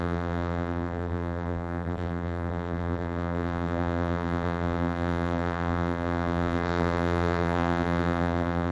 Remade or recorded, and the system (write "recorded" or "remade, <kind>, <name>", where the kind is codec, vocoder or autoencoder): remade, vocoder, BigVGAN v2